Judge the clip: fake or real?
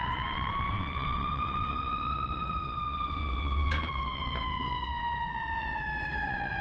fake